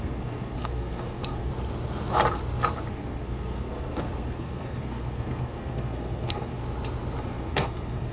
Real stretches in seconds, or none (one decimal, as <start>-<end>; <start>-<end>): 1.5-2.9; 6.6-7.2